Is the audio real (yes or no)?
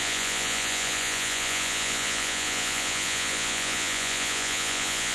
no